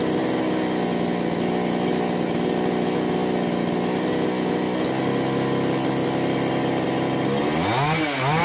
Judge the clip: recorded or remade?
recorded